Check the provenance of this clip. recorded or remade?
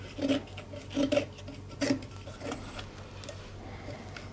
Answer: recorded